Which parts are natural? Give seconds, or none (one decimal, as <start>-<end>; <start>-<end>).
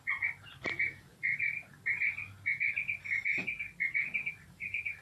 1.3-4.3